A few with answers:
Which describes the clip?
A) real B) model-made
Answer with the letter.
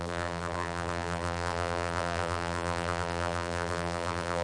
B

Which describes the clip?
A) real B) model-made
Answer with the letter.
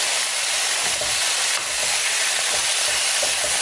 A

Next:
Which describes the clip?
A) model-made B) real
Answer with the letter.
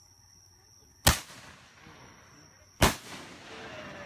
B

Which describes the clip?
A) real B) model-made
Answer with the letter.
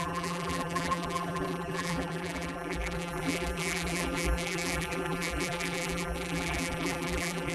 B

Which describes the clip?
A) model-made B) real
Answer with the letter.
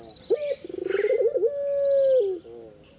B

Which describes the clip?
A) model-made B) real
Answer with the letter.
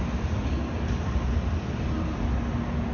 B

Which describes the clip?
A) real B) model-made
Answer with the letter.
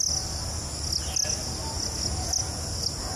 A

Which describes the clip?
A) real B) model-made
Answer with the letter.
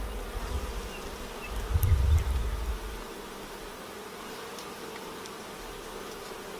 A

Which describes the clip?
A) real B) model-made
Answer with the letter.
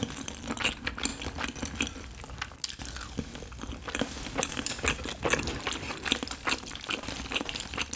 A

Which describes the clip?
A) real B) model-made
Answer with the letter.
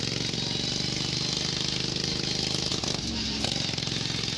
A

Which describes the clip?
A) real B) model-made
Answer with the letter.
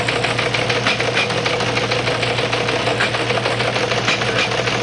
A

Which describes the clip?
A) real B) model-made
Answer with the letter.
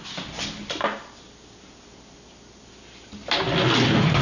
A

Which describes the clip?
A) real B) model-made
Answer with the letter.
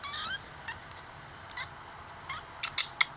A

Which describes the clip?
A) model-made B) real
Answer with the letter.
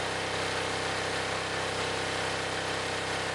B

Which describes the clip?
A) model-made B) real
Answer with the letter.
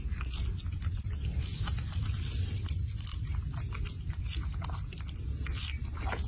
B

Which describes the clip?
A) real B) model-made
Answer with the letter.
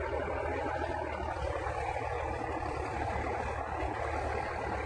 A